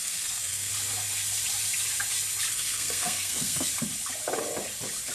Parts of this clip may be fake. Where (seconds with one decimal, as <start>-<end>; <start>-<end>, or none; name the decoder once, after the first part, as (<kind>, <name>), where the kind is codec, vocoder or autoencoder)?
0.0-0.7 (codec, SNAC); 2.5-3.7